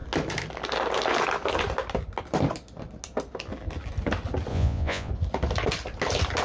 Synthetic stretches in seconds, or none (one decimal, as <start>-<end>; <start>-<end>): 4.5-5.1